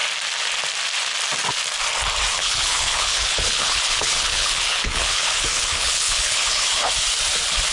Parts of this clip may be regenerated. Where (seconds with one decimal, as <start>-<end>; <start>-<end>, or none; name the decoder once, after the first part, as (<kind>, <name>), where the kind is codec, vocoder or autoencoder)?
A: 2.4-6.9 (codec, HILCodec)